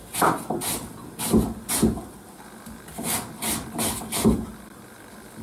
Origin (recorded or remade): recorded